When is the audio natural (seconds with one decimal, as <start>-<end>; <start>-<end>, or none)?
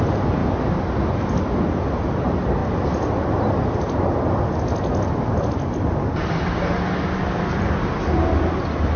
0.0-9.0